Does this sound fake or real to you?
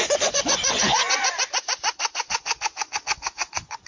fake